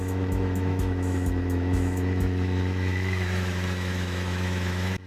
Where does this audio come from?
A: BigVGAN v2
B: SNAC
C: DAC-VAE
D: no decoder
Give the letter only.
C